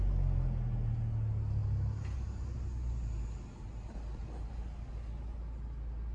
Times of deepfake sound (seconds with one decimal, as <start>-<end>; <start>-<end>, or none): none